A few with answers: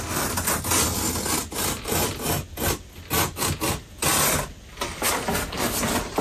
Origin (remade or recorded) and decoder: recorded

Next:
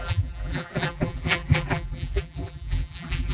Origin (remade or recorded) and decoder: remade, vocoder, BigVGAN v2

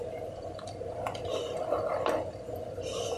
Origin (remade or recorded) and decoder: recorded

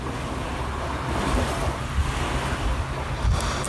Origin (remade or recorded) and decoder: recorded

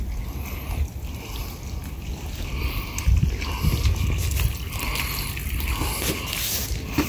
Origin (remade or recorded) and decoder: recorded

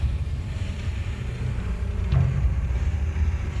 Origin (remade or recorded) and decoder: remade, vocoder, BigVGAN v2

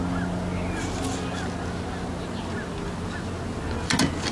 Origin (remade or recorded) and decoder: recorded